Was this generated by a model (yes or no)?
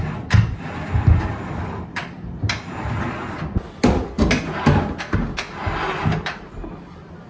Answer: no